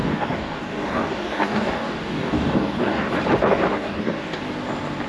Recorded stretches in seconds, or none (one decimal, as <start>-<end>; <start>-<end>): 3.1-3.5; 4.4-5.1